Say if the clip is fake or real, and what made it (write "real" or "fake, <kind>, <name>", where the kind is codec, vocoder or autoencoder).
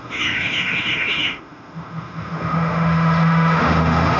fake, autoencoder, DAC-VAE